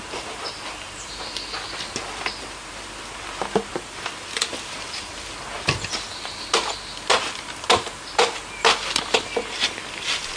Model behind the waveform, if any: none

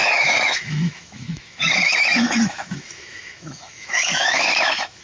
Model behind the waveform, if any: autoencoder, DAC-VAE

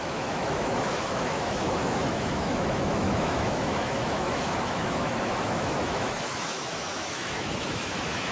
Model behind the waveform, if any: autoencoder, DAC-VAE